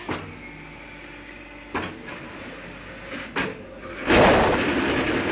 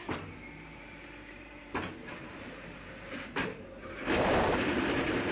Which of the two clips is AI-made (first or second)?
second